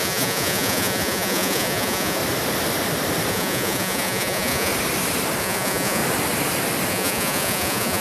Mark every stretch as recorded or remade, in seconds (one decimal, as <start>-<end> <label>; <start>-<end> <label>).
0.0-2.2 remade; 2.2-3.3 recorded; 3.3-4.7 remade; 4.7-5.4 recorded; 5.4-6.0 remade; 6.0-6.9 recorded; 6.9-8.0 remade